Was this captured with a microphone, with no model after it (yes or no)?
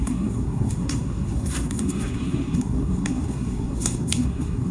no